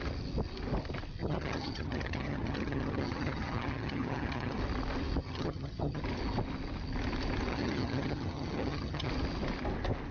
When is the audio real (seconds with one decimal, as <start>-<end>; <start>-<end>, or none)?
0.0-1.2; 4.6-5.2; 6.0-7.5; 9.1-10.1